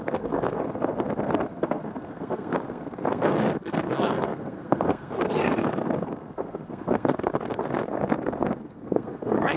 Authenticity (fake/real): fake